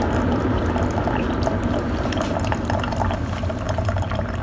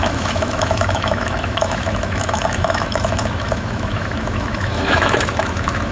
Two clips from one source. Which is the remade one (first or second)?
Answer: second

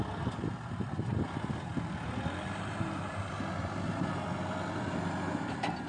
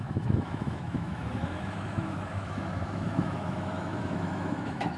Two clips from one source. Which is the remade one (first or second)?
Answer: second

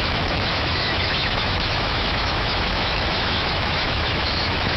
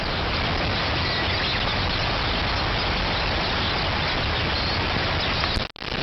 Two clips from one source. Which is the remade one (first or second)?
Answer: first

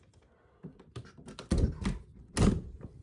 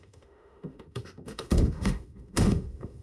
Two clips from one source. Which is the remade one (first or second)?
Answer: second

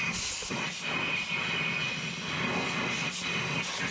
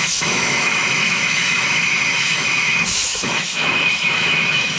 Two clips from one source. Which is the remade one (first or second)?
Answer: second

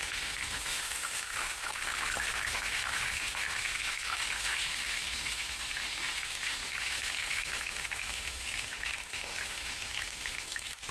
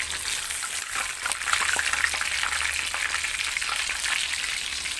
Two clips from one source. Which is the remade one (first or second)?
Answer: first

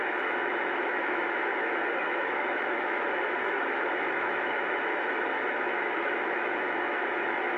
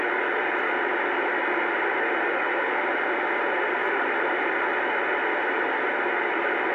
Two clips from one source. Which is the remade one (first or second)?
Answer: first